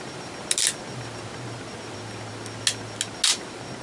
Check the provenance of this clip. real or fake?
real